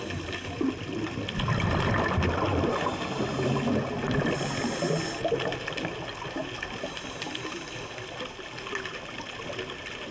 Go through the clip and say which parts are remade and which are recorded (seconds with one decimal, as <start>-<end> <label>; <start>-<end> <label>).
0.0-10.1 recorded